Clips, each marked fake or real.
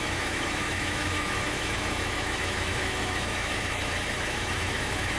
fake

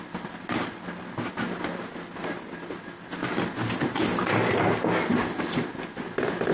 real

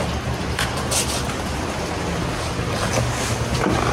real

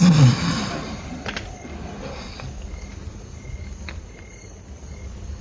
real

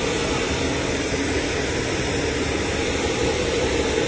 real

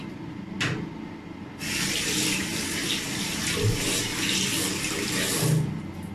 real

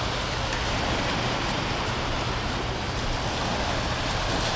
real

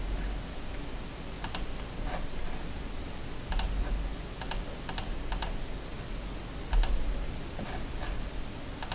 real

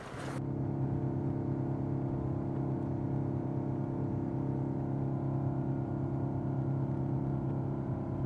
real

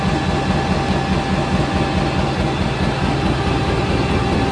real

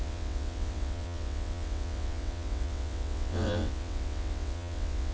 fake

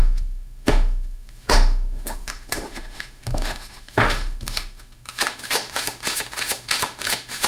fake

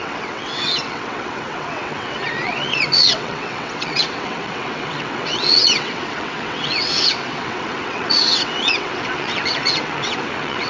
fake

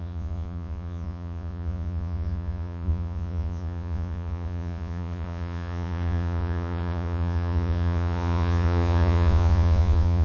fake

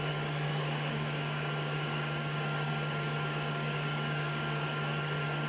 fake